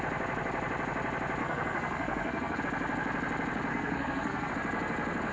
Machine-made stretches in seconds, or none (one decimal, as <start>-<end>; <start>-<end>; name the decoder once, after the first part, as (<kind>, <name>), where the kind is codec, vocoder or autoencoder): 1.4-2.6 (codec, SNAC); 3.7-4.5